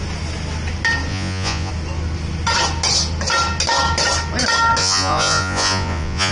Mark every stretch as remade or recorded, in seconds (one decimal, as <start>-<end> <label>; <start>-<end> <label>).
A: 0.0-1.1 recorded; 1.1-1.7 remade; 1.7-4.8 recorded; 4.8-6.3 remade